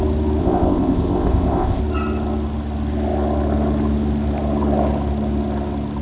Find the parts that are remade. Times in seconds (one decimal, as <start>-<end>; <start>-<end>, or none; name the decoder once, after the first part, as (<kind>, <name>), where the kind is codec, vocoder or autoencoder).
0.4-1.8 (codec, ZipCodec)